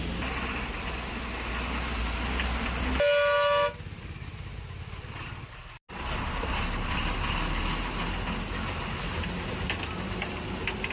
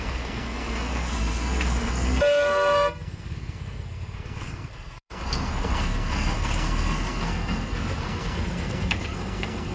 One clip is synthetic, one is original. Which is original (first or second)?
first